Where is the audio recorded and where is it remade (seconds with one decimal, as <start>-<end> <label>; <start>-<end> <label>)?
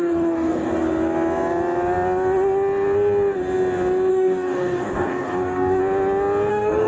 0.0-0.7 remade; 0.7-4.1 recorded; 4.1-5.8 remade; 5.8-6.5 recorded; 6.5-6.9 remade